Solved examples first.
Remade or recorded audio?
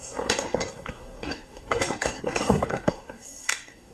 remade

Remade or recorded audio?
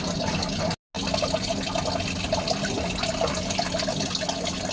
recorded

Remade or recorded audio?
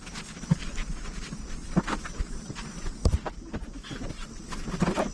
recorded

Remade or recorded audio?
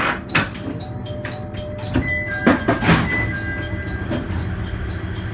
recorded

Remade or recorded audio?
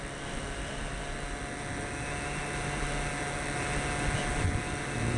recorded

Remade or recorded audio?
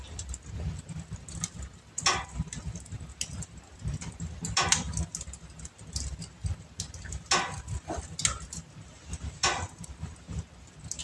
recorded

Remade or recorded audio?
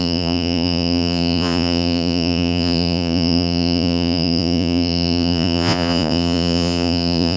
remade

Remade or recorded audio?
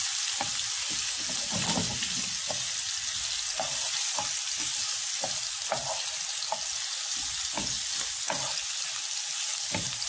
recorded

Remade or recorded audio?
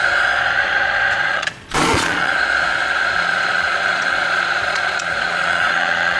remade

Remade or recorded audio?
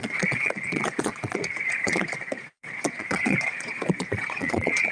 remade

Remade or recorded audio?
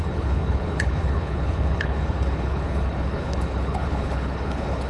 remade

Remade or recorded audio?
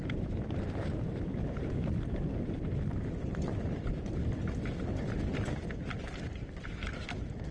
remade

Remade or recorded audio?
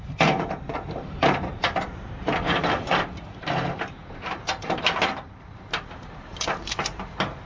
remade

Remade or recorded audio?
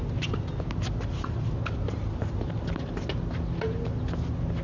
recorded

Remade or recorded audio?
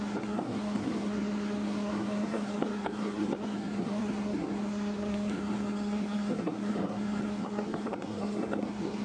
remade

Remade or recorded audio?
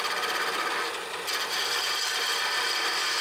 recorded